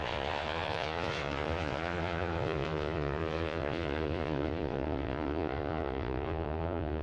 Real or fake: fake